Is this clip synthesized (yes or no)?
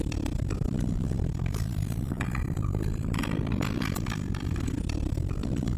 yes